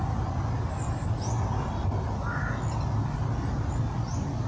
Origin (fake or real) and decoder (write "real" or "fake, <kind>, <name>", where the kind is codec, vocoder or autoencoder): real